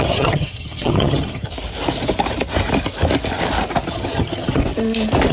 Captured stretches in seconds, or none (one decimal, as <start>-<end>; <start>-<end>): 1.5-3.9; 4.6-5.3